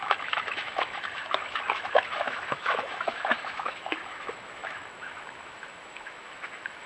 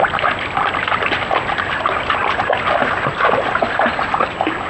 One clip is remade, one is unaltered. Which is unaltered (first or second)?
second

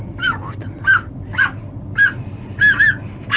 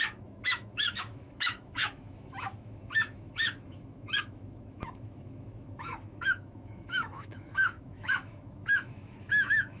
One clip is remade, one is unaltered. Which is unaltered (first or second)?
first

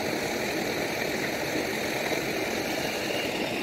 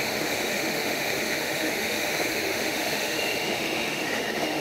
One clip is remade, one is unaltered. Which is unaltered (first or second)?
first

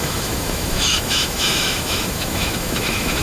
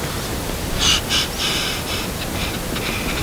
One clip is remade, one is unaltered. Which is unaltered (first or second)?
second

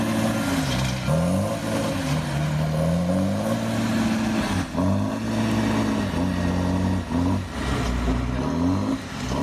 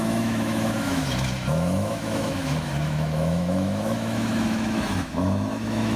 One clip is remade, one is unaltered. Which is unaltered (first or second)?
first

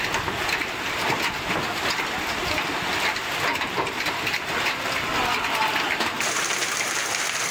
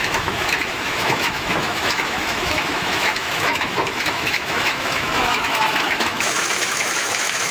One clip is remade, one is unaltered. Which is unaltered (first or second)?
first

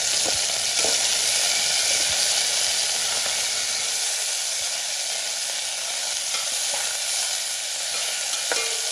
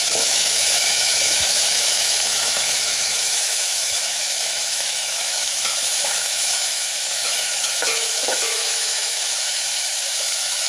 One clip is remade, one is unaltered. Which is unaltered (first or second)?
first